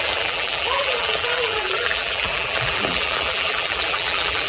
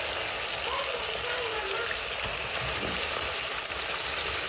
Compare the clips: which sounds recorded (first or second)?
second